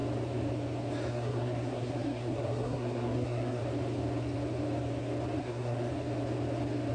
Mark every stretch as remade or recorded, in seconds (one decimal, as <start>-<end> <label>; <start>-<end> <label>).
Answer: 0.0-1.1 recorded; 1.1-3.6 remade; 3.6-5.4 recorded; 5.4-5.9 remade; 5.9-6.9 recorded